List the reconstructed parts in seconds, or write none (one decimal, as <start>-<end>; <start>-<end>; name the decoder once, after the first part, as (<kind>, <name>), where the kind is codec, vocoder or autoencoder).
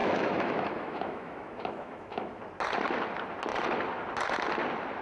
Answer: 0.0-2.4 (autoencoder, DAC-VAE)